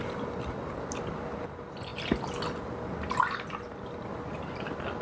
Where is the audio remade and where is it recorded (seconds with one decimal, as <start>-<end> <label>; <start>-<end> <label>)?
0.0-5.0 recorded